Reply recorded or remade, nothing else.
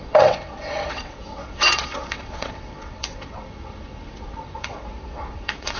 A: remade